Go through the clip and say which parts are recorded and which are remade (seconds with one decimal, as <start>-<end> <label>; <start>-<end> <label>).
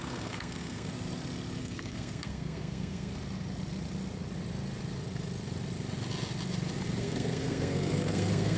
0.0-0.9 remade; 0.9-1.6 recorded; 1.6-3.1 remade; 3.1-7.0 recorded; 7.0-8.6 remade